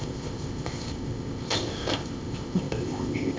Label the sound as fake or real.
fake